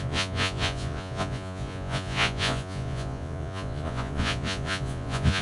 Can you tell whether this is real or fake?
fake